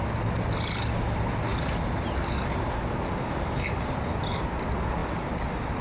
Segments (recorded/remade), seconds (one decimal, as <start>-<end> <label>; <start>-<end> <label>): 0.0-5.8 recorded